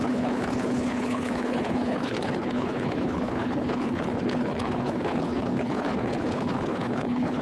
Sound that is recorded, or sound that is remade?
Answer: remade